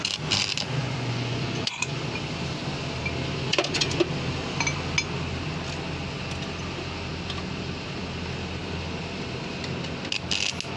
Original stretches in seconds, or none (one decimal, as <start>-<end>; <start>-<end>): 0.0-0.8; 2.0-3.5; 4.0-10.8